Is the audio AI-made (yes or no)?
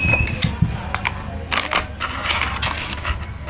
no